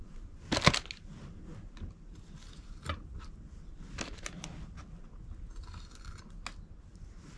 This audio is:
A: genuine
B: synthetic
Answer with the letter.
A